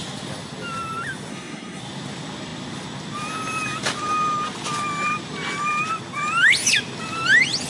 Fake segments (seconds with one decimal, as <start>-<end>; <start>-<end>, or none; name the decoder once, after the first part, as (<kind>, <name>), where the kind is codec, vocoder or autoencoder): 1.3-1.8 (codec, SNAC)